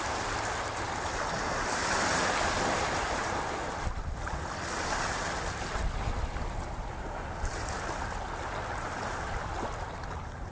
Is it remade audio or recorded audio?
recorded